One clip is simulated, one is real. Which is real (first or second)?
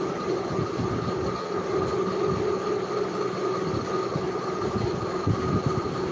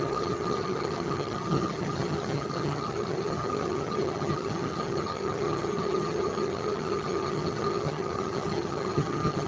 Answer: first